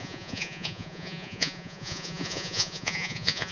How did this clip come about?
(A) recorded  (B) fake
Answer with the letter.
B